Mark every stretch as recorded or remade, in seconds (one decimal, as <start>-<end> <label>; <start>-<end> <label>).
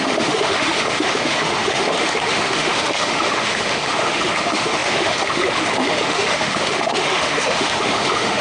0.0-8.4 remade